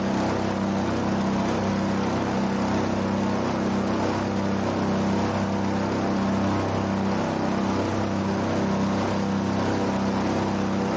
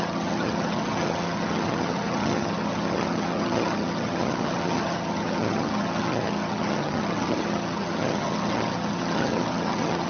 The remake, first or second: second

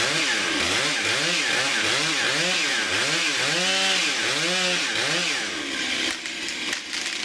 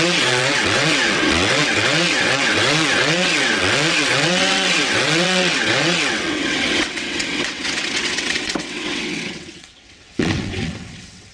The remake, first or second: second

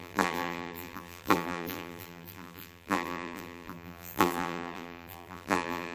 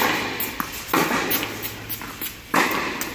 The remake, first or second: first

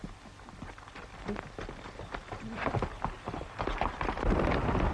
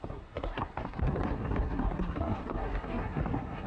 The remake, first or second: second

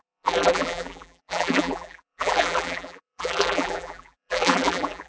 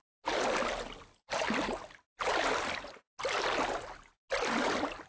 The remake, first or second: first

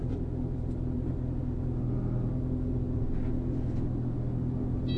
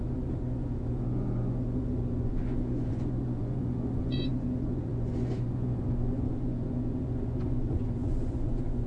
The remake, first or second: second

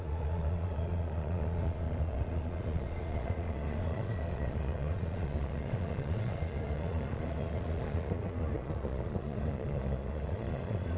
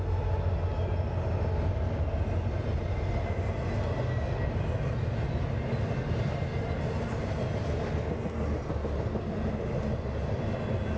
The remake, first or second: first